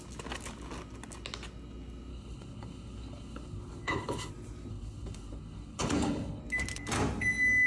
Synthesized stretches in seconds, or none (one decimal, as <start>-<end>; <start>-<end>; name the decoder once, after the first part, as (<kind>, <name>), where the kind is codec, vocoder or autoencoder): 2.1-4.3 (codec, HILCodec); 4.7-6.4